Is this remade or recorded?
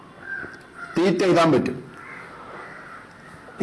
recorded